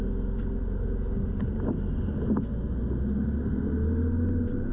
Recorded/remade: recorded